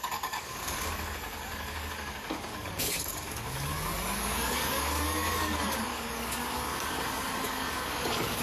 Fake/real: fake